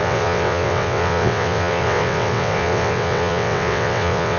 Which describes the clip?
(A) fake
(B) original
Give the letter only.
A